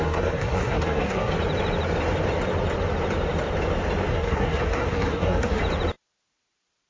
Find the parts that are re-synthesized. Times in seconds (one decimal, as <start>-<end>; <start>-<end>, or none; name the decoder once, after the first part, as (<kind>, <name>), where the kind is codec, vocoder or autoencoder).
0.0-1.3 (codec, SNAC); 4.1-5.6